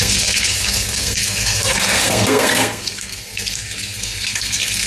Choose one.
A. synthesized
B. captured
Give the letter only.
A